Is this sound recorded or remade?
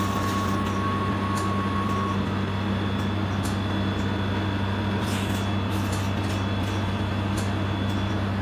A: recorded